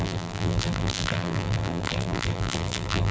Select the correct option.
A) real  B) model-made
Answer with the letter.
B